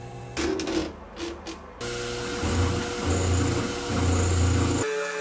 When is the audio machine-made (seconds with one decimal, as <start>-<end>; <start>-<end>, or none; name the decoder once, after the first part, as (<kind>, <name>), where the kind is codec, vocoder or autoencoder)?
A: none